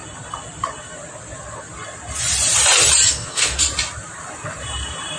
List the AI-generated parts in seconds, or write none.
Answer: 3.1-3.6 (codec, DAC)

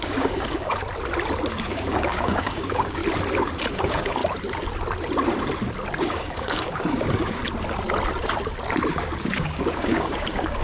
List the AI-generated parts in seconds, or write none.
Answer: 0.0-0.8 (codec, DAC); 1.5-3.0; 3.7-4.2; 6.0-7.4; 8.9-10.6

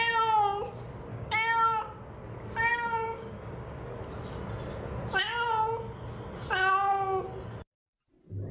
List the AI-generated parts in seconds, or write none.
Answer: 1.1-1.8 (codec, DAC); 2.7-4.0

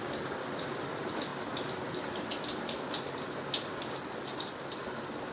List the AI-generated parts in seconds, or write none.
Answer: none

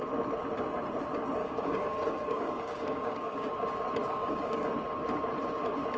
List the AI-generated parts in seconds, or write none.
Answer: 1.4-3.5 (codec, DAC); 4.0-4.7

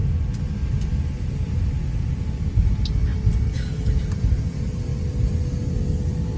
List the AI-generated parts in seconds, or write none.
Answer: none

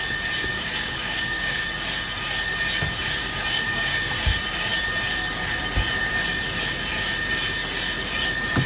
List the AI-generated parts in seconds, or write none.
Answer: 0.5-1.6 (codec, DAC); 3.2-3.9

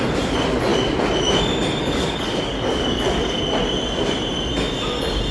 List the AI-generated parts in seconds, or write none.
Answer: 1.8-3.4 (codec, DAC)